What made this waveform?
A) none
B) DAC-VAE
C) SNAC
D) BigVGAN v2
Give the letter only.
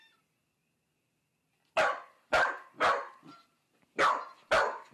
A